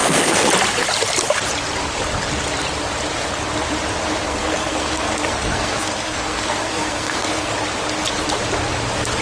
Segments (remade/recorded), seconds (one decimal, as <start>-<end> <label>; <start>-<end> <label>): 0.0-0.5 remade; 0.5-4.2 recorded; 4.2-7.5 remade; 7.5-9.2 recorded